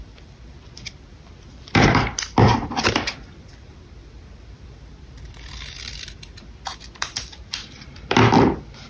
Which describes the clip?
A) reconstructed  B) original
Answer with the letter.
A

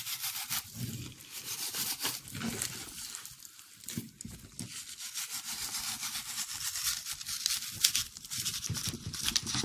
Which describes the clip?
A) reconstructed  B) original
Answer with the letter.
A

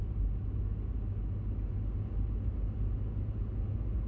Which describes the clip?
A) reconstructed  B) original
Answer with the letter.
B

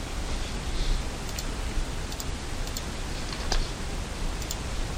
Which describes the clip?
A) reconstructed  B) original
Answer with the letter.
B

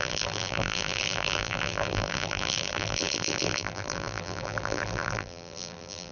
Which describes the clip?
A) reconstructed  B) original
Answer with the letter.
A